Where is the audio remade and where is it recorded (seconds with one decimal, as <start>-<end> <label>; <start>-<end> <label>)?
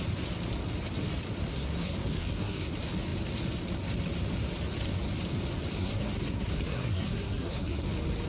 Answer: 0.0-1.5 recorded; 1.5-2.7 remade; 2.7-5.7 recorded; 5.7-7.8 remade; 7.8-8.3 recorded